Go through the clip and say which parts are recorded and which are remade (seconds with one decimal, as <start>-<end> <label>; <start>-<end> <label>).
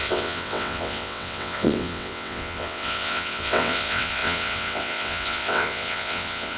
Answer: 0.0-6.6 remade